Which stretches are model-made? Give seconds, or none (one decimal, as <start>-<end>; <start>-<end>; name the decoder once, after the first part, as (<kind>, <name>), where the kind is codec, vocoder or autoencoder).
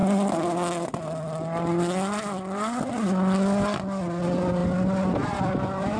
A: none